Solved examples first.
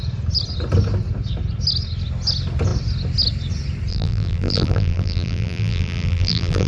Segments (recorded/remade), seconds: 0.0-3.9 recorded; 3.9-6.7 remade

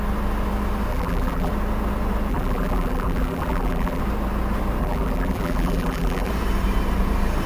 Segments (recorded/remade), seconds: 0.0-0.9 recorded; 0.9-1.5 remade; 1.5-2.3 recorded; 2.3-4.0 remade; 4.0-4.8 recorded; 4.8-6.3 remade; 6.3-7.5 recorded

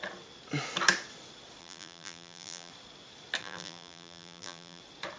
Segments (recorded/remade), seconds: 0.0-1.6 recorded; 1.6-2.7 remade; 2.7-3.4 recorded; 3.4-4.8 remade; 4.8-5.2 recorded